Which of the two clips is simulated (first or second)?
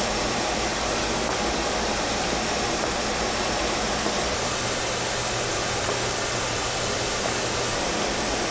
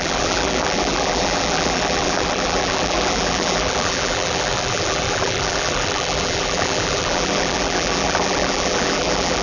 second